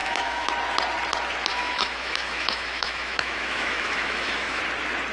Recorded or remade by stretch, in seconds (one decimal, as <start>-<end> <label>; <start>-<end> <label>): 0.0-0.5 remade; 0.5-1.5 recorded; 1.5-4.6 remade; 4.6-5.1 recorded